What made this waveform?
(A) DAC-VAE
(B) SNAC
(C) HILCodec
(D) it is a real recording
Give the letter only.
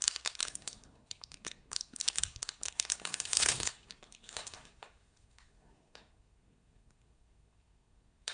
B